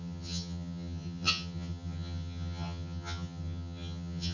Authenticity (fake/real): fake